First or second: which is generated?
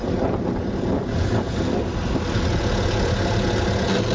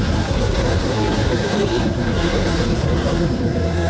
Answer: second